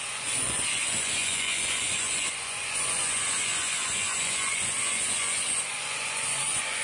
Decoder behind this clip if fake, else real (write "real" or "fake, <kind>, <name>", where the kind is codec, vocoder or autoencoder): fake, vocoder, Vocos